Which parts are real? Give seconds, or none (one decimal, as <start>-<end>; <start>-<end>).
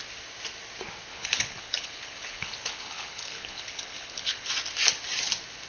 0.0-1.1; 4.5-5.7